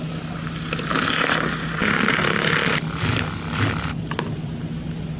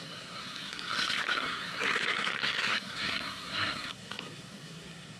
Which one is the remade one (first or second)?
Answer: second